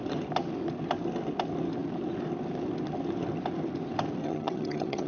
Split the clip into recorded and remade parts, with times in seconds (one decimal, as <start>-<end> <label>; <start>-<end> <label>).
0.0-4.2 recorded; 4.2-5.1 remade